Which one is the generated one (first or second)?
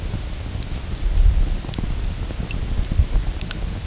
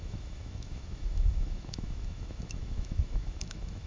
second